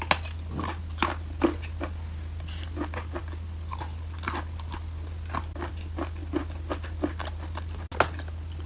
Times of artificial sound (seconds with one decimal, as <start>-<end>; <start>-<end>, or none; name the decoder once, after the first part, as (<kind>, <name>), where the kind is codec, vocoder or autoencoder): none